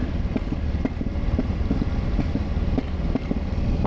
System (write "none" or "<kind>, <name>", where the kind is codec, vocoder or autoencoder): none